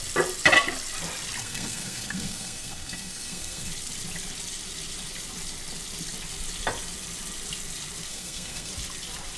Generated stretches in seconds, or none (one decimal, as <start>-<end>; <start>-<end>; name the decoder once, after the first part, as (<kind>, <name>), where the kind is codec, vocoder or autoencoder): 1.4-3.7 (codec, SNAC); 8.1-8.7